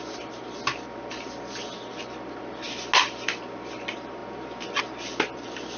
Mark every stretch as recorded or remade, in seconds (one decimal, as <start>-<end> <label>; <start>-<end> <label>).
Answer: 0.0-5.8 recorded